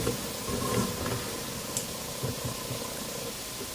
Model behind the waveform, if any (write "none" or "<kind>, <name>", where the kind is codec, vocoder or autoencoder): none